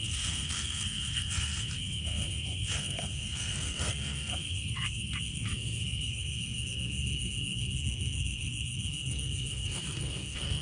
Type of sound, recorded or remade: remade